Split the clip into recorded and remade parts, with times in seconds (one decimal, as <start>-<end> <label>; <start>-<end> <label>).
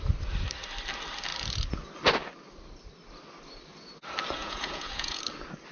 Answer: 0.0-4.4 recorded; 4.4-5.2 remade; 5.2-5.7 recorded